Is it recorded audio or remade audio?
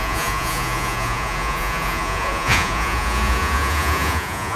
remade